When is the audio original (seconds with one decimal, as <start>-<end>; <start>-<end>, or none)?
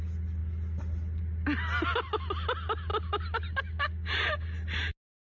0.0-5.3